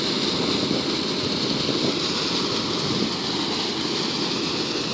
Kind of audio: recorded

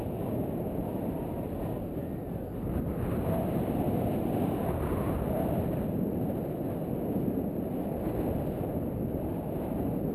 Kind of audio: recorded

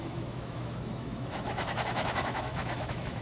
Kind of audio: remade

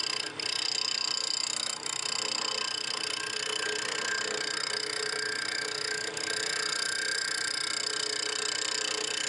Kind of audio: recorded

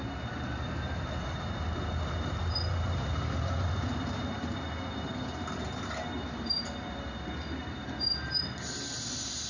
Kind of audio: recorded